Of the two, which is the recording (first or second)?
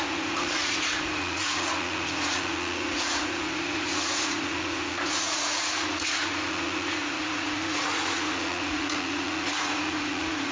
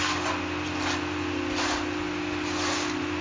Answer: second